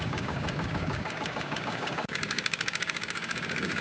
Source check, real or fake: fake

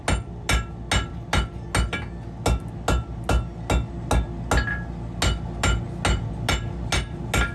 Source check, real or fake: real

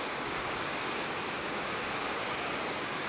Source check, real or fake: fake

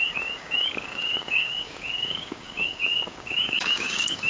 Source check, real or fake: fake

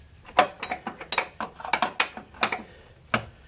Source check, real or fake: real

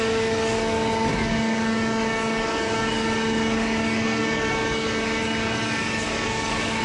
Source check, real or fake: fake